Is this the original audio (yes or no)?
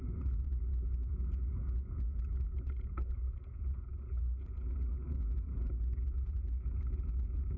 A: no